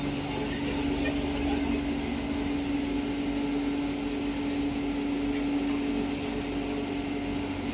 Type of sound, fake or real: real